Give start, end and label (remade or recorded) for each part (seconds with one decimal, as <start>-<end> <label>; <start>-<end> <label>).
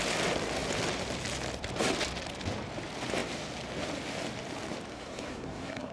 0.0-4.9 recorded; 4.9-5.9 remade